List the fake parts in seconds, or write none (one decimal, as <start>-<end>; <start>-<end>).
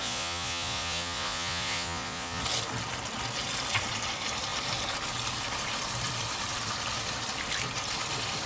0.0-2.4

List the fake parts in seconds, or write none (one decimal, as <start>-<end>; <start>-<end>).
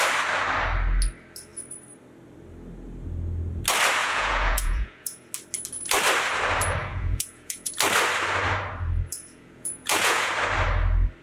4.0-5.3; 6.8-7.7; 9.1-10.3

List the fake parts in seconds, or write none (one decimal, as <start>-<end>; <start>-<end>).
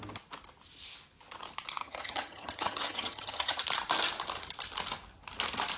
1.8-3.6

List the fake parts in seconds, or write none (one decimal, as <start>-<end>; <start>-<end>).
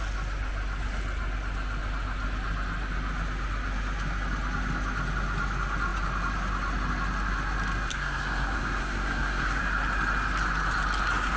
7.9-9.6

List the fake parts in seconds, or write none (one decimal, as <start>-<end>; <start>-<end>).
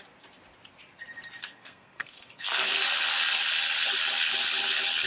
1.4-2.7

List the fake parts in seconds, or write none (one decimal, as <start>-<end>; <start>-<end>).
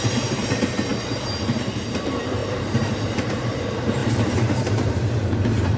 0.0-5.8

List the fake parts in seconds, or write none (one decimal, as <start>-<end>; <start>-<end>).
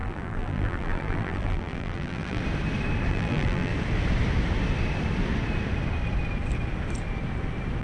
0.0-2.4; 3.1-3.7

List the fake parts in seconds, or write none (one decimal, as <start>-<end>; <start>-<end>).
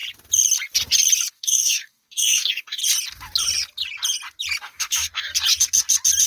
1.3-2.8; 4.6-5.3